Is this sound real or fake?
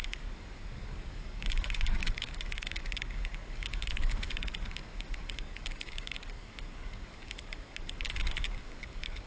fake